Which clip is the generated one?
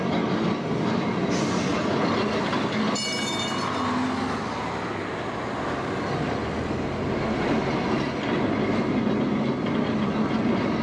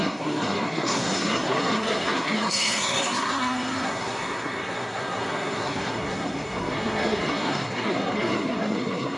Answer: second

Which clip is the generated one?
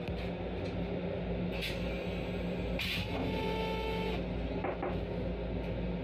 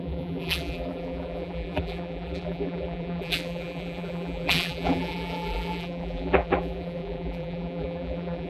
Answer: second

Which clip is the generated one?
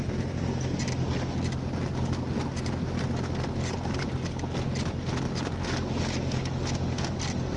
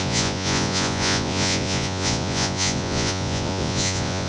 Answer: second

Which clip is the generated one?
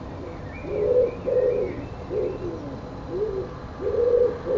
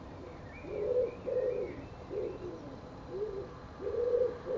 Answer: second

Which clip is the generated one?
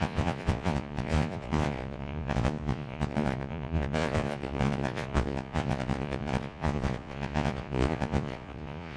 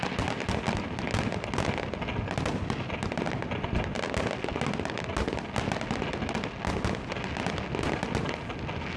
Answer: first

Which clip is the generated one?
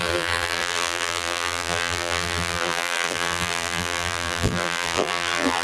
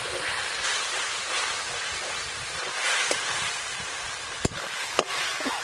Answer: first